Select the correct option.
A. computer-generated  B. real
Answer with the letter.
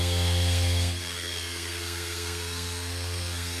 A